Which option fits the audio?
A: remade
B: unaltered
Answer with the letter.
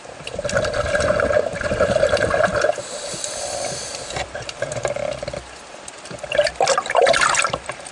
A